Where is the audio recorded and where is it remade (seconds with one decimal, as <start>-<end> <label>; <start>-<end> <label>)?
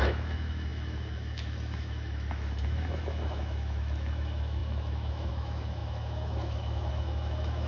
0.0-7.7 remade